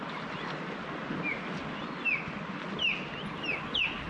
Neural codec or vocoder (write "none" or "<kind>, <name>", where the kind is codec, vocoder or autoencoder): none